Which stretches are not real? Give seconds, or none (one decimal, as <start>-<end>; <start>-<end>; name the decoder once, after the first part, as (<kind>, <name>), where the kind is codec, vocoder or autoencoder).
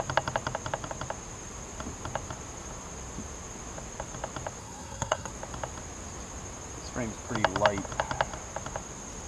4.6-5.3 (codec, SNAC)